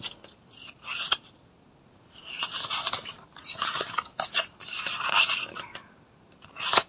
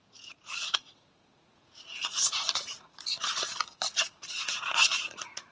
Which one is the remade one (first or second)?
second